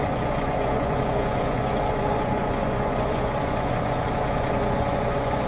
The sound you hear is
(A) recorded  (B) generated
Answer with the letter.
B